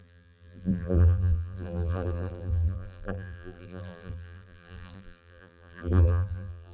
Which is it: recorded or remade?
remade